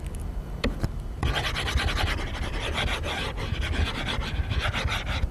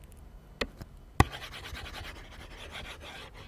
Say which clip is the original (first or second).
second